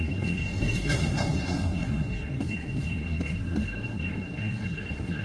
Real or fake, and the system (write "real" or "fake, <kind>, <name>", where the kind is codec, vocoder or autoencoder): fake, codec, SNAC